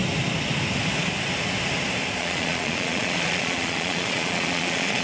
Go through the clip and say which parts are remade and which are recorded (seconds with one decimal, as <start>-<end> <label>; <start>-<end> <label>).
0.0-2.2 recorded; 2.2-5.0 remade